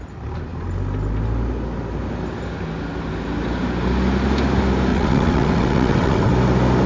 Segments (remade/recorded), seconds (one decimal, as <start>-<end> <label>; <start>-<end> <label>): 0.0-4.9 recorded; 4.9-6.3 remade; 6.3-6.9 recorded